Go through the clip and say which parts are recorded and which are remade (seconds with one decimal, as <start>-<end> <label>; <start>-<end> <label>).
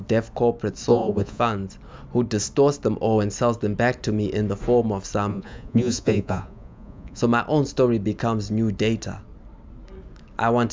0.0-0.9 recorded; 0.9-1.4 remade; 1.4-5.3 recorded; 5.3-7.2 remade; 7.2-10.7 recorded